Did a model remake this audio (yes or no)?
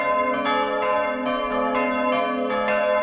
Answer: no